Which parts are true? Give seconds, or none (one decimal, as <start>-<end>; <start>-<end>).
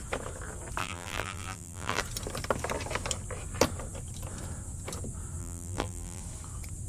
0.0-0.8; 2.0-5.4; 6.2-6.9